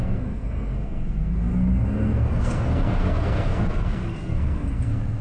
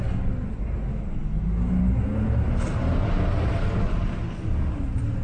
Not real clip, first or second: first